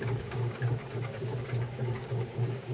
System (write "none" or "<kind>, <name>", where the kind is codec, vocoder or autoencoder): codec, DAC